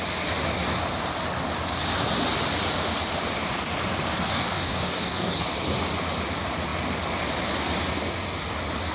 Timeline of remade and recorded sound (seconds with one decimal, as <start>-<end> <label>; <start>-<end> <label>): 0.0-4.3 recorded; 4.3-5.4 remade; 5.4-8.9 recorded